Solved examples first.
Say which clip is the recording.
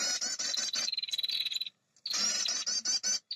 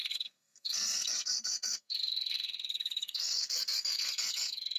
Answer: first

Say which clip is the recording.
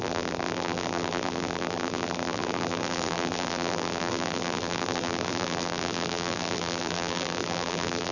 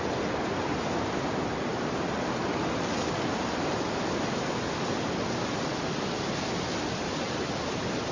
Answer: second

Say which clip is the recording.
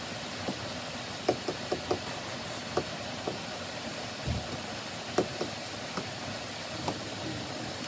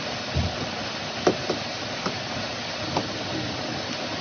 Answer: second